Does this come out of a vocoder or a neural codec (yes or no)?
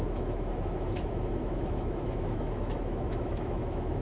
yes